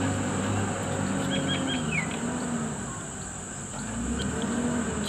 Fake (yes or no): no